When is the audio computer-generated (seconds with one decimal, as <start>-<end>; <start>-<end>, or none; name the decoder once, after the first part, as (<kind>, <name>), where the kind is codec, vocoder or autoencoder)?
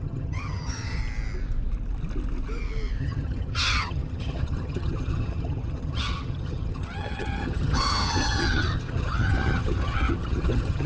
0.0-1.0 (vocoder, HiFi-GAN); 3.0-10.9